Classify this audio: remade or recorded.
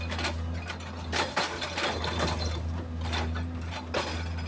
recorded